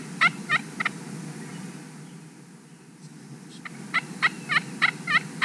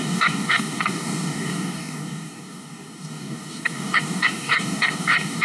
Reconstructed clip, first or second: second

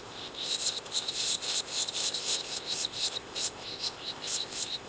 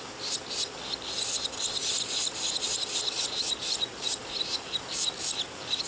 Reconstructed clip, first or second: first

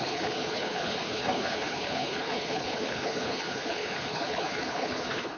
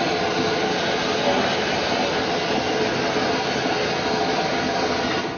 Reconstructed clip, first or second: first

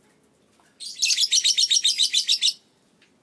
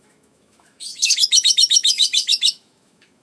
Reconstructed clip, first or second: second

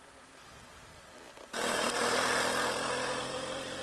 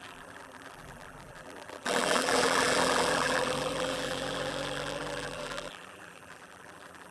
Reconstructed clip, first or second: second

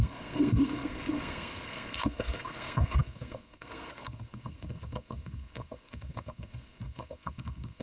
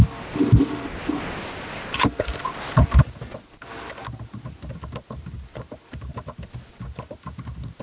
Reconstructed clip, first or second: first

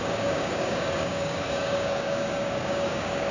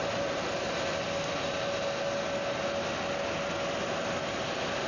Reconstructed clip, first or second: first